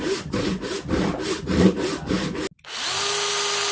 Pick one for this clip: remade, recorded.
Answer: recorded